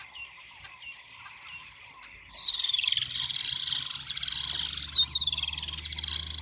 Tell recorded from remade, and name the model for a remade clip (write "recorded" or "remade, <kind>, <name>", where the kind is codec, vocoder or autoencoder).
recorded